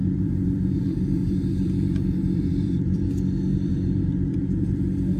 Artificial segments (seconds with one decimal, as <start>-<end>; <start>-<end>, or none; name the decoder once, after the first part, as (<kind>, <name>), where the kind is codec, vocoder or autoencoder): 0.0-3.1 (vocoder, BigVGAN v2); 3.5-4.7